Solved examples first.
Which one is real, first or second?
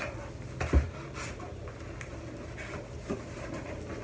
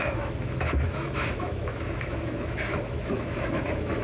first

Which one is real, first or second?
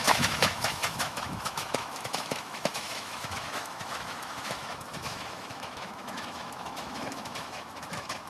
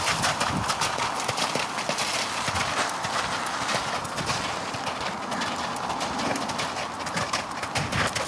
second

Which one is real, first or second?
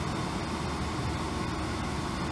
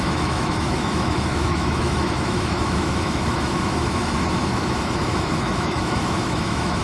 first